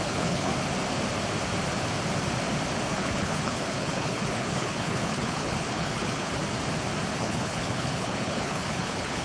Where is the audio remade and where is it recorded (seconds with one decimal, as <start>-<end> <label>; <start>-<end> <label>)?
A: 0.0-0.5 remade; 0.5-2.9 recorded; 2.9-6.4 remade; 6.4-7.2 recorded; 7.2-9.2 remade